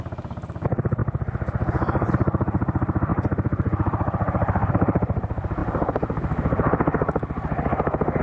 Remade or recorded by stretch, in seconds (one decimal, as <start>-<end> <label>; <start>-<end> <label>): 0.0-1.0 remade; 1.0-2.1 recorded; 2.1-5.6 remade; 5.6-8.2 recorded